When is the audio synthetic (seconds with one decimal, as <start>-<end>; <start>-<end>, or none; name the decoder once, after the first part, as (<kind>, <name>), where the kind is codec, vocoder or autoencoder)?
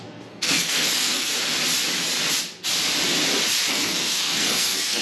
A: 0.0-1.3 (codec, SNAC); 3.7-5.0